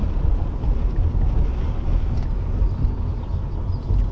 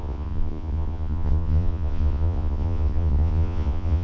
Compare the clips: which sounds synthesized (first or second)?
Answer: second